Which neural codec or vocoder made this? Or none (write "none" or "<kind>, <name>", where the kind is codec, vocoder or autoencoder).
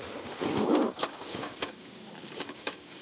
codec, DAC